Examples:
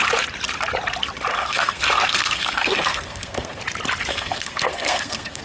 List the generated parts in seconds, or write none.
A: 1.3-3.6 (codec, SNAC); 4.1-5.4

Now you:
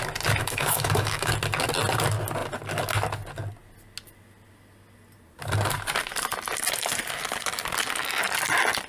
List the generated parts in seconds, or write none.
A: 0.4-1.3 (autoencoder, DAC-VAE)

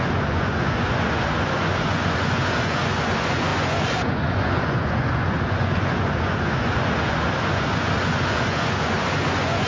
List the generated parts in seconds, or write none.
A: 0.0-9.7 (vocoder, Vocos)

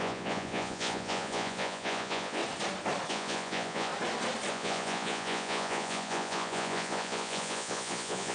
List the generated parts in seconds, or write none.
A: 0.0-2.4 (vocoder, Vocos); 3.1-3.9; 4.5-8.3

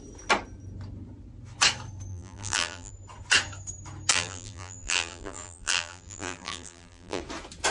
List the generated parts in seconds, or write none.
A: 2.1-2.9 (vocoder, BigVGAN v2); 4.1-7.2